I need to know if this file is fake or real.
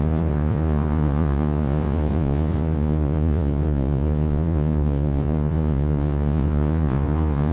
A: fake